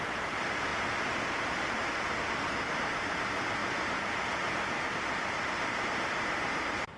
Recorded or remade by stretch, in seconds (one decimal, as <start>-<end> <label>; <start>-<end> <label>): 0.0-7.0 recorded